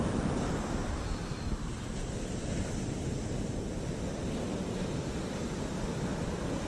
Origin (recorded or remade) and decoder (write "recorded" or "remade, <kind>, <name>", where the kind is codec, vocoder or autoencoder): recorded